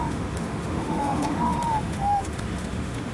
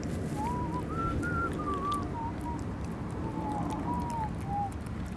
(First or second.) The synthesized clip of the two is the first